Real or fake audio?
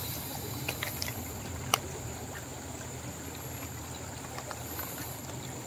real